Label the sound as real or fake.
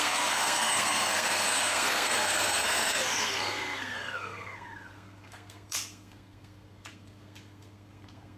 fake